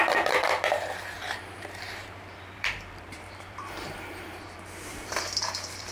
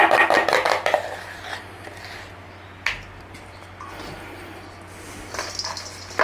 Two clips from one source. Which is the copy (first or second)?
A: first